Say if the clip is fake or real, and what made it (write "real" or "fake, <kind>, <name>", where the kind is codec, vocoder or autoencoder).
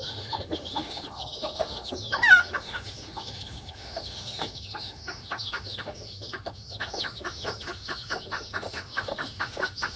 fake, autoencoder, DAC-VAE